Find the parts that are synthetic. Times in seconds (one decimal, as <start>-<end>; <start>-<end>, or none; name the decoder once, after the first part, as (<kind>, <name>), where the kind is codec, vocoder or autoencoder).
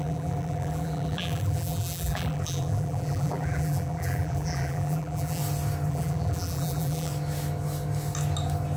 0.0-5.4 (vocoder, BigVGAN v2); 5.9-7.1